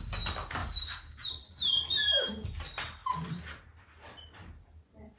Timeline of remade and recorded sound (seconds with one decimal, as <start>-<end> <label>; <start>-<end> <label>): 0.0-0.6 recorded; 0.6-2.3 remade; 2.3-5.2 recorded